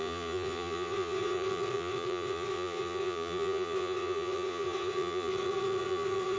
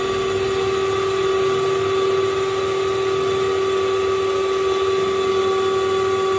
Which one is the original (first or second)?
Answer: second